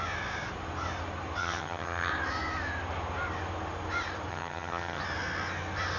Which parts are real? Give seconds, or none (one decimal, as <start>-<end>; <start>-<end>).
0.0-1.4; 2.1-4.3; 5.0-6.0